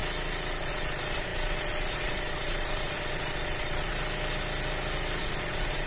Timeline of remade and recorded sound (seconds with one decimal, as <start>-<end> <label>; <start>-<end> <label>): 0.0-0.6 recorded; 0.6-3.9 remade; 3.9-5.2 recorded; 5.2-5.9 remade